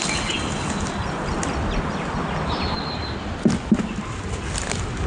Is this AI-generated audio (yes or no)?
no